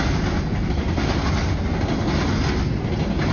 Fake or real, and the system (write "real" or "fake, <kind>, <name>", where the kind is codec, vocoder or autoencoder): real